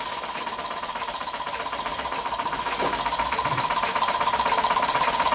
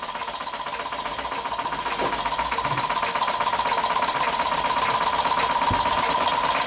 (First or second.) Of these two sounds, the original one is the second